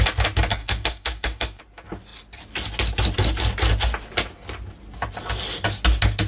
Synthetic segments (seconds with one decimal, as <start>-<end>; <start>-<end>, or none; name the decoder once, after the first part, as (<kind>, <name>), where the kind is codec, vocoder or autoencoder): 0.5-1.6 (codec, DAC)